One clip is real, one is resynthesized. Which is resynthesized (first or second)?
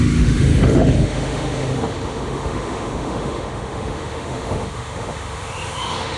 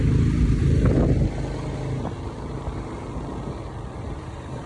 first